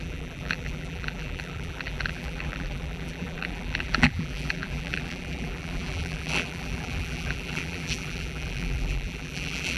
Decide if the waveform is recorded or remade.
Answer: remade